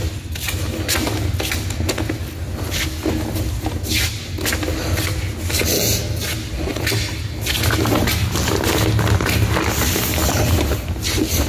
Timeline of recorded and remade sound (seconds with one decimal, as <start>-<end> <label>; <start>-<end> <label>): 0.0-11.5 recorded